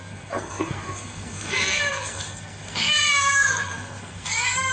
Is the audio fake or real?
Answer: fake